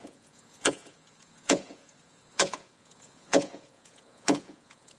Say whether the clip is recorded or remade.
remade